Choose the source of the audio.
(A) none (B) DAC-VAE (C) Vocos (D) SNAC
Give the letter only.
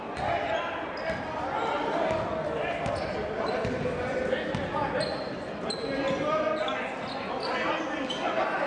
A